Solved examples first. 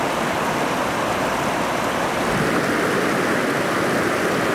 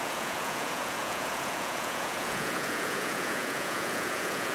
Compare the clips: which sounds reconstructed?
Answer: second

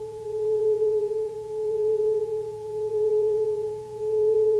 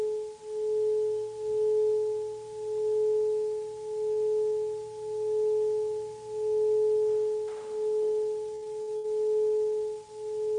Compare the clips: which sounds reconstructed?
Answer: first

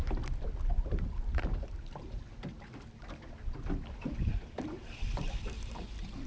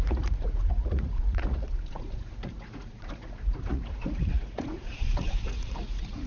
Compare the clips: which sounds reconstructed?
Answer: second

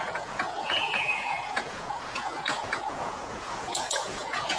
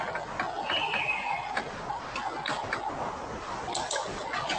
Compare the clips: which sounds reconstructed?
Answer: first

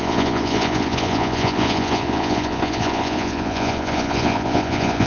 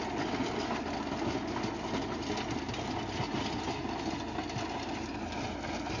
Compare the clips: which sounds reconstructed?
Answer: first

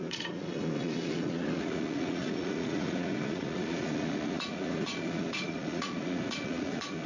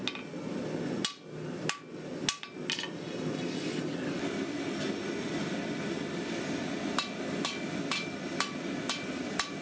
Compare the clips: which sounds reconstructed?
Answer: first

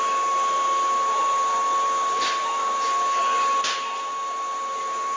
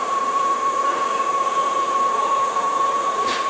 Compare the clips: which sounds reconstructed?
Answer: second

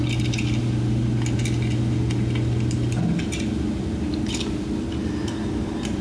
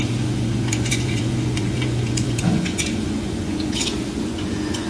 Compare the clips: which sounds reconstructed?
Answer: second